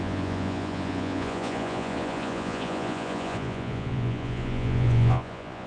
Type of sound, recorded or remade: remade